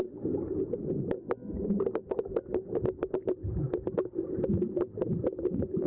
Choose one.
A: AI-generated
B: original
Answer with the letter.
B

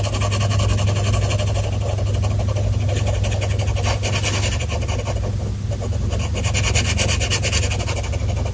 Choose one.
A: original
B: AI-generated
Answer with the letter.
A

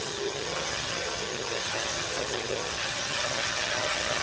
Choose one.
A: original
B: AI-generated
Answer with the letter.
B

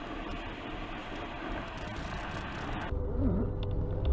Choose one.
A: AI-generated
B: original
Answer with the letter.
B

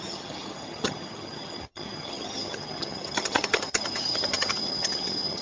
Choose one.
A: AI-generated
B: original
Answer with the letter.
A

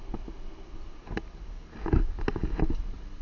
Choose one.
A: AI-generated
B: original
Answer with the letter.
B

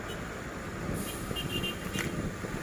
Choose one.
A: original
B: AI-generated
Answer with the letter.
A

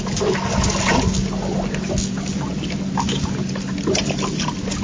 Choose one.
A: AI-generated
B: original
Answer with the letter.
B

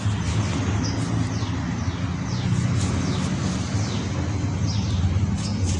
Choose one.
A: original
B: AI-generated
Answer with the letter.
A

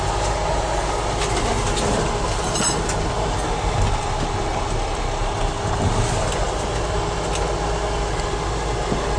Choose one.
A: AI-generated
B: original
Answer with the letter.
B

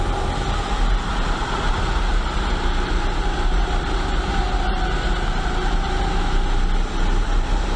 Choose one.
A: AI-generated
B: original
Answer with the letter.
B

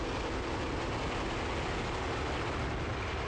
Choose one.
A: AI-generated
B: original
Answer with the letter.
B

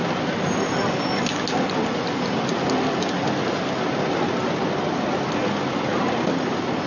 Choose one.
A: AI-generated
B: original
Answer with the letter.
B